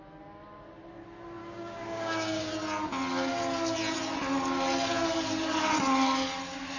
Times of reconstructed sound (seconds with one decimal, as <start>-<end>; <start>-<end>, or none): 1.4-2.5